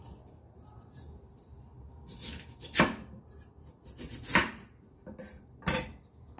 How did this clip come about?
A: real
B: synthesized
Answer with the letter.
A